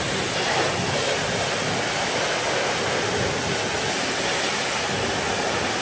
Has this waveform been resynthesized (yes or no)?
no